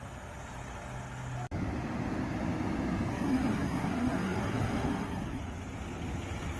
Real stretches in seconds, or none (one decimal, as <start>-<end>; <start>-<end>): 0.0-3.1; 5.4-6.6